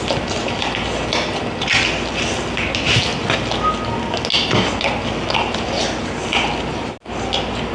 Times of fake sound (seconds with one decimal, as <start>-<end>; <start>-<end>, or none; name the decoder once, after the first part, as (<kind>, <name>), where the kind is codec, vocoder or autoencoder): none